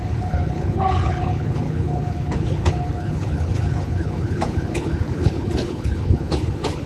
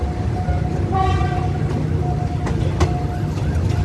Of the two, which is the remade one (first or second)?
first